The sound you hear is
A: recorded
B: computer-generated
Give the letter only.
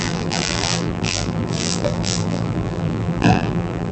B